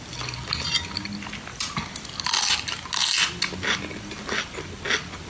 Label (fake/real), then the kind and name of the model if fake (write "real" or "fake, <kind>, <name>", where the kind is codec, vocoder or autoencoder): real